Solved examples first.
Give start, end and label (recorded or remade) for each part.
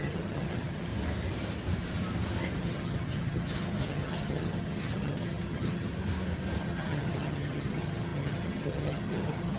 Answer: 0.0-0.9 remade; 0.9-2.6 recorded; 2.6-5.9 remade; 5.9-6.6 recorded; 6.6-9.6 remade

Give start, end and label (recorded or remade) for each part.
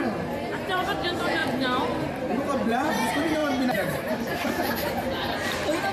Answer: 0.0-1.4 recorded; 1.4-2.9 remade; 2.9-5.9 recorded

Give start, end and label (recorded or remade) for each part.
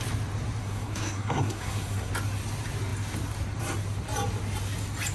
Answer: 0.0-0.6 recorded; 0.6-2.1 remade; 2.1-5.1 recorded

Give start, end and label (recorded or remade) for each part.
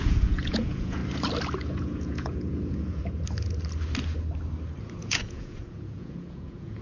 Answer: 0.0-1.0 remade; 1.0-1.6 recorded; 1.6-3.0 remade; 3.0-5.0 recorded; 5.0-6.8 remade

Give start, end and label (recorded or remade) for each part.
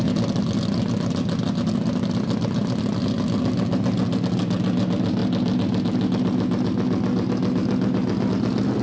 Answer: 0.0-8.8 recorded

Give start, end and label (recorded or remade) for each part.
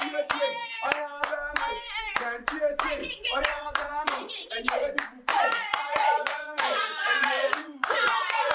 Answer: 0.0-3.0 recorded; 3.0-4.6 remade; 4.6-5.3 recorded; 5.3-8.5 remade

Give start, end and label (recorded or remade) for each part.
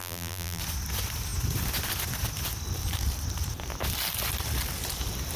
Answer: 0.0-0.6 remade; 0.6-5.4 recorded